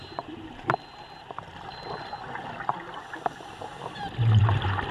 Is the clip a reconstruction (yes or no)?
no